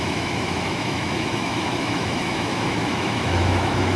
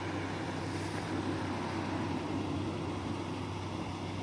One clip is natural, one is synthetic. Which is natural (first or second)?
second